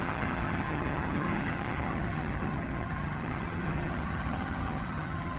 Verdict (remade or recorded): remade